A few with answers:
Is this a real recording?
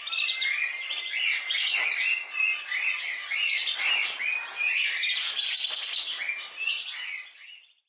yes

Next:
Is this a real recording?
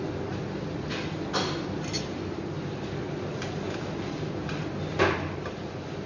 yes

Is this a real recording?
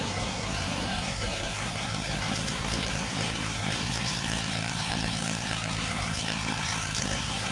no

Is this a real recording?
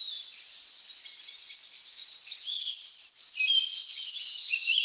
yes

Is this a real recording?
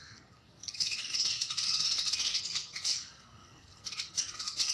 no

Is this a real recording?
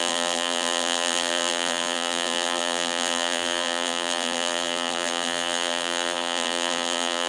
no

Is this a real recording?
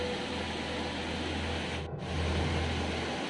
yes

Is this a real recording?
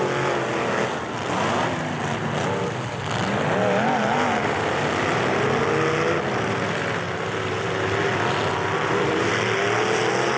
yes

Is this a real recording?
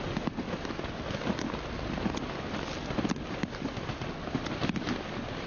yes